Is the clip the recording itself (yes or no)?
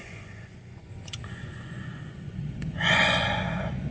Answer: no